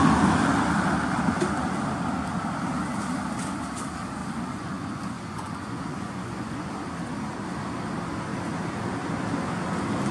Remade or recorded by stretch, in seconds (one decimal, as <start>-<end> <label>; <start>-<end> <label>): 0.0-4.2 recorded; 4.2-6.7 remade; 6.7-10.1 recorded